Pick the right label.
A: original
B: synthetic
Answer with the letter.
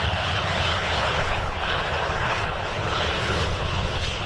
B